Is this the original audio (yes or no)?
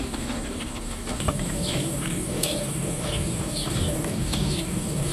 no